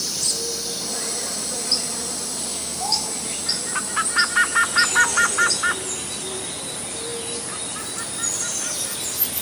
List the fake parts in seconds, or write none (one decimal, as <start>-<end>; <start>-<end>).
2.5-3.1